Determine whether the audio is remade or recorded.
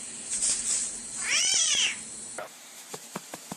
remade